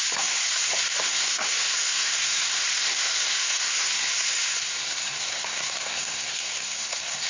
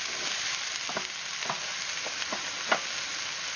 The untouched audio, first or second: second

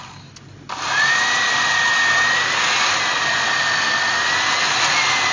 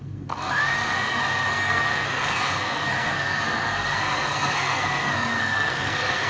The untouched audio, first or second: first